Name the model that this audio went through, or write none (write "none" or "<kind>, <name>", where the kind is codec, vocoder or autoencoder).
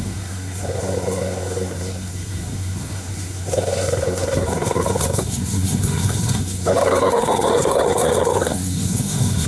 codec, SNAC